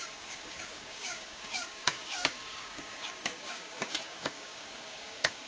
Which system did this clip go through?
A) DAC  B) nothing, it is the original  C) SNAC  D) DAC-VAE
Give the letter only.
A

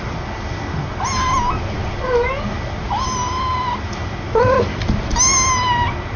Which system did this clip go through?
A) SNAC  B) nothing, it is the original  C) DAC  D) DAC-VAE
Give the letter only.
B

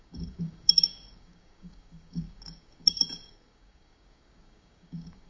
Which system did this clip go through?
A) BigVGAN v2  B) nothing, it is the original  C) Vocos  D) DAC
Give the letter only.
D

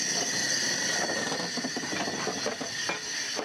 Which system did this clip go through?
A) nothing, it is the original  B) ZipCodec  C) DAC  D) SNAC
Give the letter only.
A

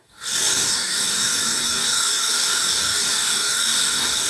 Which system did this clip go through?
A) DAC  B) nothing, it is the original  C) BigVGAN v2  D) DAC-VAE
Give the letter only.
A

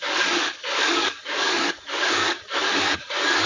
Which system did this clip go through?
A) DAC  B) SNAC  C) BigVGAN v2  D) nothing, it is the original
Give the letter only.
A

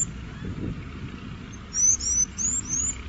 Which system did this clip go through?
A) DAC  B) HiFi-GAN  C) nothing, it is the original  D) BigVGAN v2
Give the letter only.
C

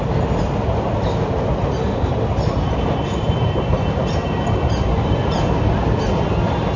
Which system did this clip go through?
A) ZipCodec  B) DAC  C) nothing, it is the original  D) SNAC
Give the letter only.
C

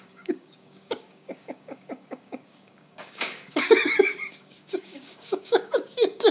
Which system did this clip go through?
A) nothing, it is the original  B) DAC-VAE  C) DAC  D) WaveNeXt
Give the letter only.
C